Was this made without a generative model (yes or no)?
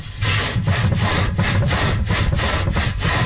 yes